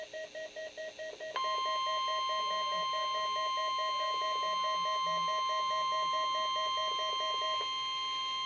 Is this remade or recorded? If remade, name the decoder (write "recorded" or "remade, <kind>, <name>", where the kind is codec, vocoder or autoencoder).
recorded